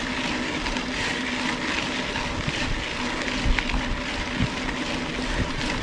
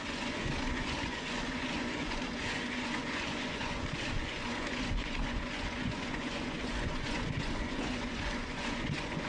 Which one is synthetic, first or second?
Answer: second